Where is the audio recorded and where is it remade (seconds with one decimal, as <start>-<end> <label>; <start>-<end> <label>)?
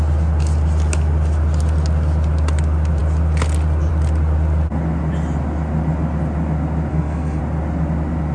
0.0-6.9 recorded; 6.9-7.4 remade; 7.4-8.3 recorded